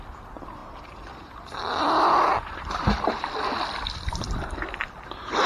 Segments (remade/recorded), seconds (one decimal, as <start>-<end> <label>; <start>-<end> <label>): 0.0-2.3 recorded; 2.3-5.1 remade; 5.1-5.5 recorded